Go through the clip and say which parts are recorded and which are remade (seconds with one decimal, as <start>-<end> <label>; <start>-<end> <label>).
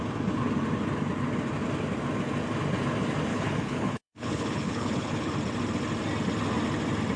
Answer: 0.0-3.3 recorded; 3.3-5.3 remade; 5.3-7.2 recorded